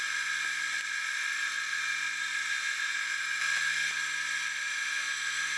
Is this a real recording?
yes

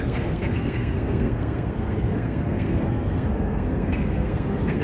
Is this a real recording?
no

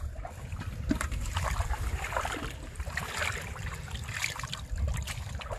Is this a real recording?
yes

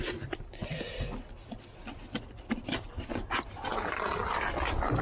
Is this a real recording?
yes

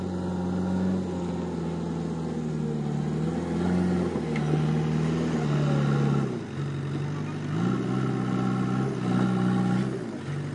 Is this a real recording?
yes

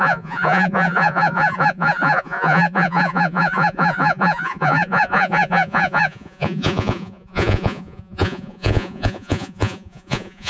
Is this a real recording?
no